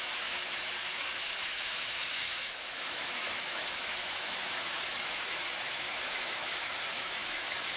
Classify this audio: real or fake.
fake